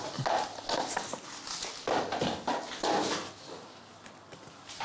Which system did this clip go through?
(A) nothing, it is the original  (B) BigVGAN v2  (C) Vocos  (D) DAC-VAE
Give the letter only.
A